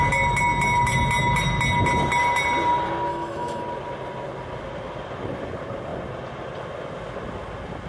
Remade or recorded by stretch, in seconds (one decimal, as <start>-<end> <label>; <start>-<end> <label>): 0.0-3.1 recorded; 3.1-3.6 remade; 3.6-7.9 recorded